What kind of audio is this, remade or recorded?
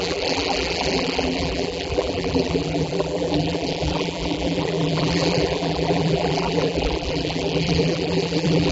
remade